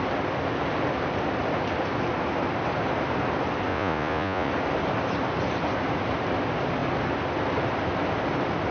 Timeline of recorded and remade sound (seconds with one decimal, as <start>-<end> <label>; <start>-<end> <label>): 0.0-3.7 recorded; 3.7-4.5 remade; 4.5-8.7 recorded